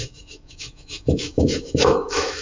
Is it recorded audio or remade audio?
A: remade